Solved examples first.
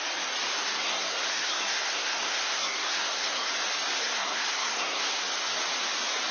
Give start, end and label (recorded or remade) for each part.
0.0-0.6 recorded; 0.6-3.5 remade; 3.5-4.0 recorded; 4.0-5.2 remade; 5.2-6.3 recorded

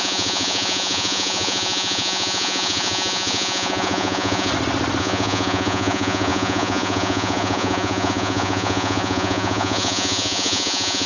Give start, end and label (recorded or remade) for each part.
0.0-4.5 remade; 4.5-5.0 recorded; 5.0-11.1 remade

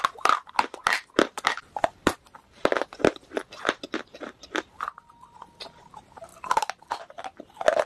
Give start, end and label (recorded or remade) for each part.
0.0-0.8 recorded; 0.8-5.5 remade; 5.5-6.3 recorded; 6.3-6.8 remade; 6.8-7.9 recorded

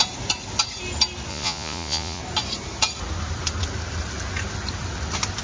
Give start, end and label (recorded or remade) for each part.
0.0-1.3 recorded; 1.3-2.2 remade; 2.2-5.4 recorded

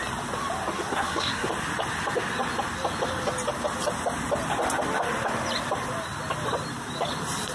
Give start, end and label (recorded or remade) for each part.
0.0-0.9 recorded; 0.9-1.5 remade; 1.5-7.5 recorded